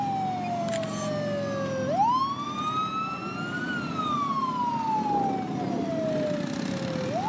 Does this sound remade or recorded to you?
recorded